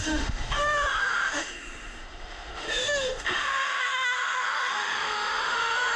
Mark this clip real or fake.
fake